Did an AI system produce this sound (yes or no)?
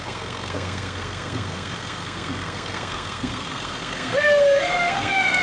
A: yes